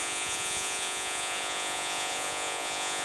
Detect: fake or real fake